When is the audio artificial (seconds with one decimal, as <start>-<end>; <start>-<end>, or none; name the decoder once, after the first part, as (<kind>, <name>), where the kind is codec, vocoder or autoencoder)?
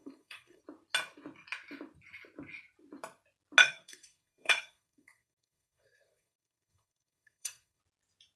0.0-0.6 (codec, SNAC); 3.6-7.8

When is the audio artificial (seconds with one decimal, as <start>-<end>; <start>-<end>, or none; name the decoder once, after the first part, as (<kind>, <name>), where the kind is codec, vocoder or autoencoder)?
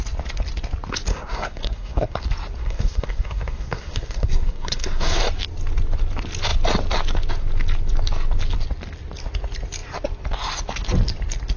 1.1-2.2 (codec, SNAC); 2.6-5.2